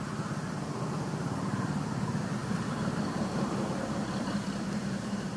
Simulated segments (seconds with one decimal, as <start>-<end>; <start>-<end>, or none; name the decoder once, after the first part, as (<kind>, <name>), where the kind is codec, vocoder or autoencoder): 2.4-5.4 (vocoder, BigVGAN v2)